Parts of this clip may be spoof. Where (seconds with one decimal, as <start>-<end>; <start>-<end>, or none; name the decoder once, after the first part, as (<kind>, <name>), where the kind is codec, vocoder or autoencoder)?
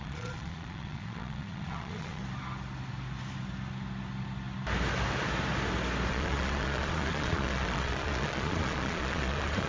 0.0-2.2 (vocoder, Vocos); 6.1-9.7